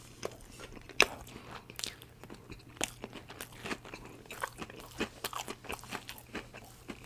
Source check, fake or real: real